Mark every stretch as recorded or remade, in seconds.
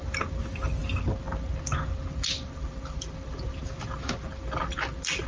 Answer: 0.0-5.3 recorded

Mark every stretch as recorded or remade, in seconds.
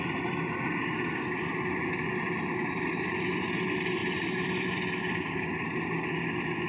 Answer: 0.0-6.7 recorded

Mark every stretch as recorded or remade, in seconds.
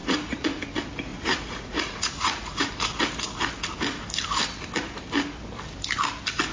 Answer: 0.0-0.6 remade; 0.6-1.1 recorded; 1.1-2.7 remade; 2.7-6.5 recorded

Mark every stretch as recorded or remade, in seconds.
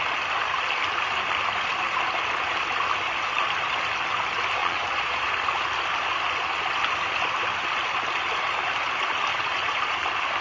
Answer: 0.0-4.6 recorded; 4.6-5.3 remade; 5.3-9.3 recorded; 9.3-10.0 remade; 10.0-10.4 recorded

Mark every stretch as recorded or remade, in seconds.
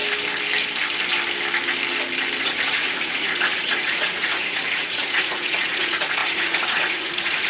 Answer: 0.0-2.4 recorded; 2.4-7.5 remade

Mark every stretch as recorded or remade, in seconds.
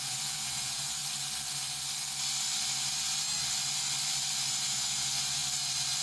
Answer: 0.0-1.0 remade; 1.0-4.5 recorded; 4.5-5.4 remade; 5.4-6.0 recorded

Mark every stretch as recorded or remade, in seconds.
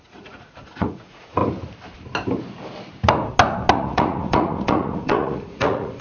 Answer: 0.0-1.4 remade; 1.4-3.7 recorded; 3.7-6.0 remade